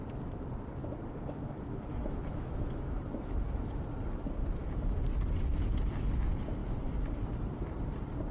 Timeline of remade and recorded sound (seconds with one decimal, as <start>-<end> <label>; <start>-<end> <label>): 0.0-0.8 recorded; 0.8-3.8 remade; 3.8-8.3 recorded

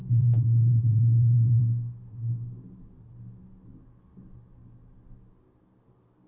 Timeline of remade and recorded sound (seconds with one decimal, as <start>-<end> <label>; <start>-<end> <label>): 0.0-1.6 remade; 1.6-6.3 recorded

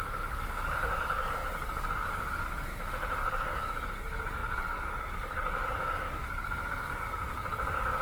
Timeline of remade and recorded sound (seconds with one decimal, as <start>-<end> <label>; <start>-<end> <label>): 0.0-2.7 remade; 2.7-3.2 recorded; 3.2-8.0 remade

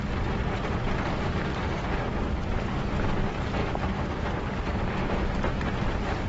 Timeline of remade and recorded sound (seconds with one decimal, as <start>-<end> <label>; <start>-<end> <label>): 0.0-3.6 recorded; 3.6-5.3 remade; 5.3-6.3 recorded

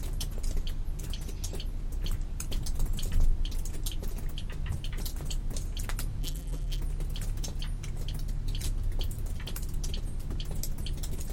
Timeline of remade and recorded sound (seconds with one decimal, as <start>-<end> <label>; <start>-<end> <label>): 0.0-6.2 recorded; 6.2-6.8 remade; 6.8-11.3 recorded

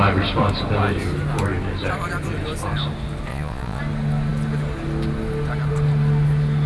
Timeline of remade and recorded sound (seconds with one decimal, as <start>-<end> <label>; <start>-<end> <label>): 0.0-3.3 recorded; 3.3-3.8 remade; 3.8-6.7 recorded

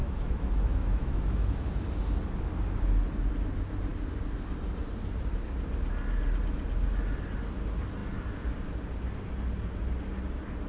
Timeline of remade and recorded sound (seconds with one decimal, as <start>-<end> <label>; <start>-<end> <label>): 0.0-1.7 remade; 1.7-10.7 recorded

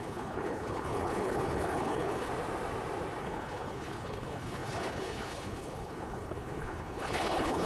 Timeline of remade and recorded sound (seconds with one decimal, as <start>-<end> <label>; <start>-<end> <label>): 0.0-2.3 remade; 2.3-3.2 recorded; 3.2-7.7 remade